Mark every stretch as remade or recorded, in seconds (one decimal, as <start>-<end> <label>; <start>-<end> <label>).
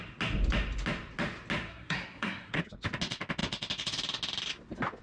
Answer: 0.0-1.7 recorded; 1.7-2.6 remade; 2.6-5.0 recorded